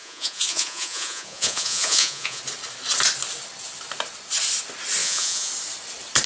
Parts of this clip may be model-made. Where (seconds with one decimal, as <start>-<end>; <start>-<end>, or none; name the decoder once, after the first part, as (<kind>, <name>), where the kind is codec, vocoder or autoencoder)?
0.0-2.4 (vocoder, Vocos); 5.0-5.5